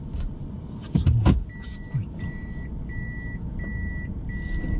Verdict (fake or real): real